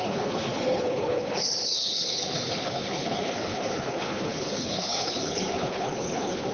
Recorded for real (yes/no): no